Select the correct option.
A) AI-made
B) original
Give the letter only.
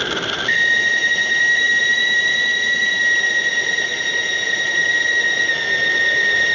B